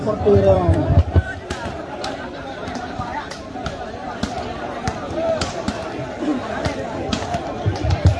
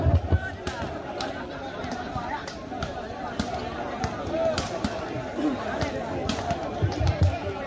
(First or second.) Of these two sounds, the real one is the second